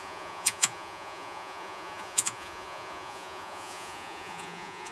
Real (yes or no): no